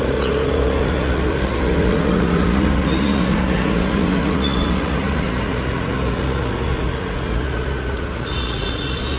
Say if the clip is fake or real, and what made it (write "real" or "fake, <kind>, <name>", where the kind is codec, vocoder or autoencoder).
fake, vocoder, Vocos